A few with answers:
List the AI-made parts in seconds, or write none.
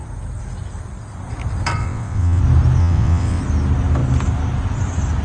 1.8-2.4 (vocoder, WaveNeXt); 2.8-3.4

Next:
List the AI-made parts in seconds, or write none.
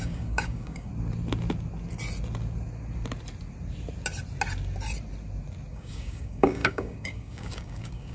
0.0-0.9 (codec, DAC); 5.7-8.1